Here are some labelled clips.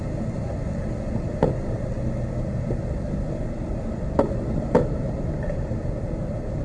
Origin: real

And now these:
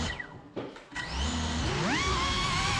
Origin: real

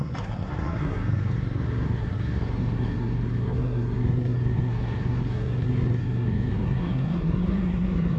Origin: fake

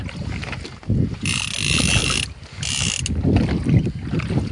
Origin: real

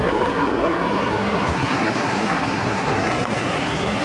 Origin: fake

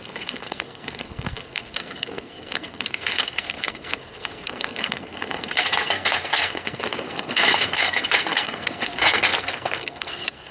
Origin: fake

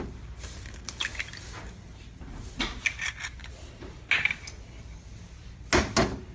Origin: real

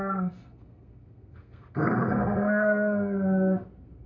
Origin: fake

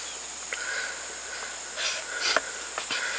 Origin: real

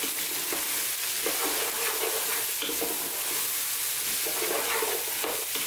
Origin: real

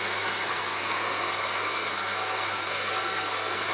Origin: fake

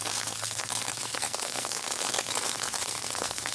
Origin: fake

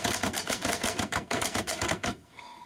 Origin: fake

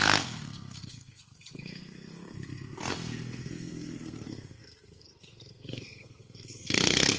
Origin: fake